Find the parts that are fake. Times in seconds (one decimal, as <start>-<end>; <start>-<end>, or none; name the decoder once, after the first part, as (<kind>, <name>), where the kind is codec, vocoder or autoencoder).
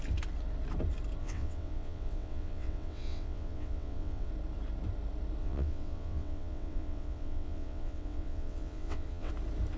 1.2-4.3 (vocoder, WaveNeXt); 5.4-9.3